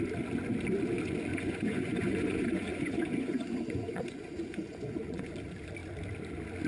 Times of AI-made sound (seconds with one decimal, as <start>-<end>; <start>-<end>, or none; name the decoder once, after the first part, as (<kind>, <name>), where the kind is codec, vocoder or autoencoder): 1.3-5.3 (vocoder, Vocos)